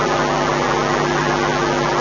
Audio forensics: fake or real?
real